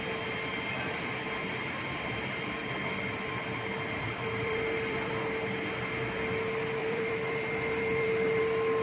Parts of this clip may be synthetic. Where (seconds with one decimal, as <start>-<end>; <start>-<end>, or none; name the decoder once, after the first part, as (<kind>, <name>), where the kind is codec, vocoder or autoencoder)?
0.5-5.1 (vocoder, BigVGAN v2); 6.8-8.4